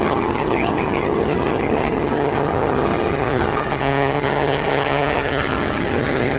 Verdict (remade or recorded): remade